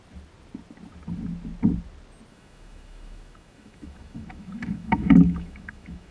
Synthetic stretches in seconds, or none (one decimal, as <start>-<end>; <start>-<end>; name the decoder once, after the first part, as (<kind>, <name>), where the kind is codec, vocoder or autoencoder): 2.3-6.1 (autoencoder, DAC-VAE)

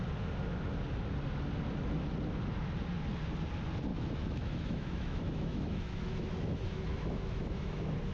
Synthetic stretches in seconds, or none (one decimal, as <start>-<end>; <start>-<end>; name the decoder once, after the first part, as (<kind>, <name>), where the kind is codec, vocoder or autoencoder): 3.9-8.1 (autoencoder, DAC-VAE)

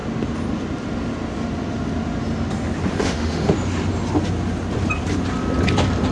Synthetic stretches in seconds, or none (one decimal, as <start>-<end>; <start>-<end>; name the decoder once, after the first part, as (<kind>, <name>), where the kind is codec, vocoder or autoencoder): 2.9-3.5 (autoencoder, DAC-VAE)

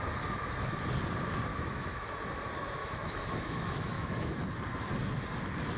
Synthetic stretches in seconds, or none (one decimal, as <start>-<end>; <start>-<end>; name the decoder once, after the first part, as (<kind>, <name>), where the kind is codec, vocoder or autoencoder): 1.5-2.2 (autoencoder, DAC-VAE); 2.8-4.5

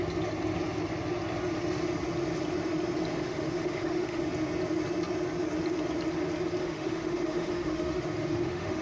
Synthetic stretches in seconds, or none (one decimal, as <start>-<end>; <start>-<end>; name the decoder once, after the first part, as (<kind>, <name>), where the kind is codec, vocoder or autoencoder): 3.1-4.2 (autoencoder, DAC-VAE); 6.6-8.8

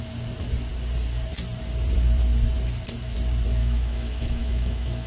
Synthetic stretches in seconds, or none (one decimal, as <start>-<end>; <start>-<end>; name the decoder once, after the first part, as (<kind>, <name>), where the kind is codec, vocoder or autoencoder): 3.6-5.1 (autoencoder, DAC-VAE)

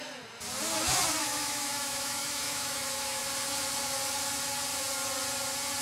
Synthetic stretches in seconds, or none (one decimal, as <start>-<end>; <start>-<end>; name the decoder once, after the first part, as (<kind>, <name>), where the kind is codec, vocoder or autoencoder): 1.2-3.2 (autoencoder, DAC-VAE)

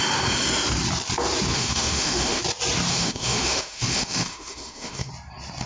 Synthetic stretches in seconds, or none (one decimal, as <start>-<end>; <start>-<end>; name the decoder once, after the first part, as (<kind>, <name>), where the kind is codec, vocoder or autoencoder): 1.5-2.4 (autoencoder, DAC-VAE); 2.9-5.1